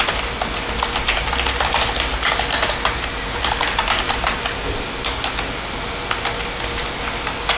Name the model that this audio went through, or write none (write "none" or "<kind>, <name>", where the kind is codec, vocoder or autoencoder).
none